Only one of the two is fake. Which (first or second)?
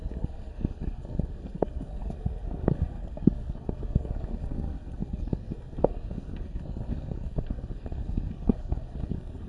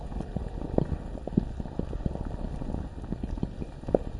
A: first